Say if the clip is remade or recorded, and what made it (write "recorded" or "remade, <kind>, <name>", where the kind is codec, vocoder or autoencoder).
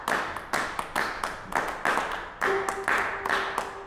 recorded